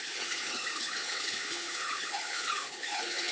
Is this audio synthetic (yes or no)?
yes